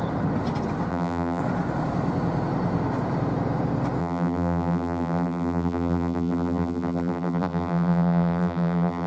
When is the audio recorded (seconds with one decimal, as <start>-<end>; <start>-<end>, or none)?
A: 0.0-0.9; 1.4-4.0